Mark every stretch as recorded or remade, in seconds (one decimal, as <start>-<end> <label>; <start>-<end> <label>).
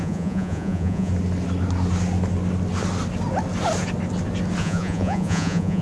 0.0-1.1 remade; 1.1-4.6 recorded; 4.6-5.8 remade